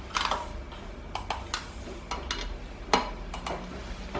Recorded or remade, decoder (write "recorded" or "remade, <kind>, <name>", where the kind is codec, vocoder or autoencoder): recorded